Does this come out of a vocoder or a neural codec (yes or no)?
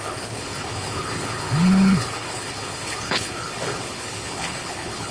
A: yes